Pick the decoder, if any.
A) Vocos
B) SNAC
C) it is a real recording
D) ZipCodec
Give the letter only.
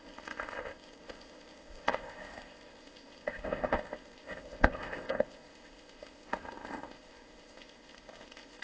D